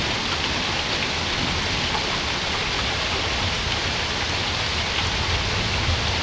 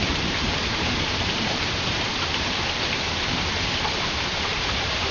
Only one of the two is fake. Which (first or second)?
second